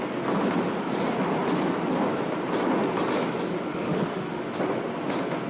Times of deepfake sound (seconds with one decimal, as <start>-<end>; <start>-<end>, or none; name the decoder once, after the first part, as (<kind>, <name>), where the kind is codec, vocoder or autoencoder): 3.7-4.4 (autoencoder, DAC-VAE)